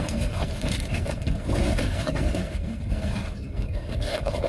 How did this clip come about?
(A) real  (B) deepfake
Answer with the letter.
B